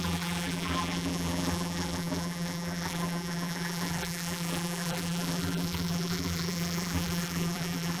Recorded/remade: remade